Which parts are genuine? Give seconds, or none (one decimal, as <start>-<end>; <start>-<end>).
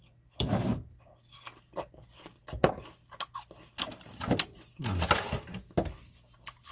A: 0.0-6.7